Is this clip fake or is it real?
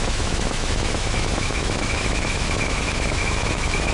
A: fake